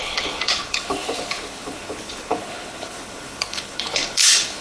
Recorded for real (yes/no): no